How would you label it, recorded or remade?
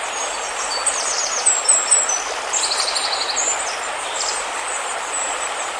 recorded